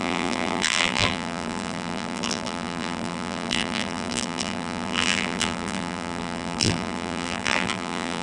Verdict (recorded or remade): remade